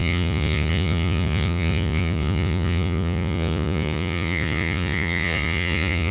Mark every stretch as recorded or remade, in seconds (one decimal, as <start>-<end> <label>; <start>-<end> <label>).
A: 0.0-6.1 remade